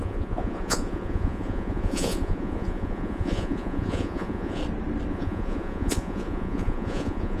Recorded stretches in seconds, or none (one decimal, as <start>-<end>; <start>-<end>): 4.6-5.1